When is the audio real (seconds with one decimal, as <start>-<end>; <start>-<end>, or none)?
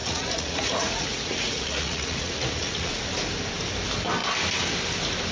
3.1-5.3